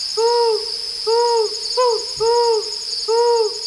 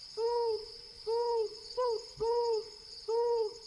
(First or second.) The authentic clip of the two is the first